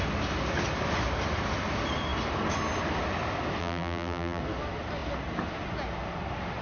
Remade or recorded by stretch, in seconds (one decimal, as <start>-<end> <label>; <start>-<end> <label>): 0.0-3.6 recorded; 3.6-4.4 remade; 4.4-6.6 recorded